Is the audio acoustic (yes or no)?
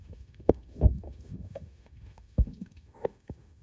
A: no